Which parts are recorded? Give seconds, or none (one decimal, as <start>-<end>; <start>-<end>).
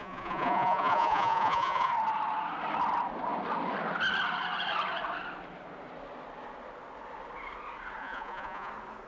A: 1.9-8.0; 8.7-9.1